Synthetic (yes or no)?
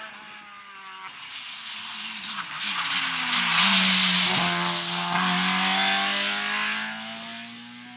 no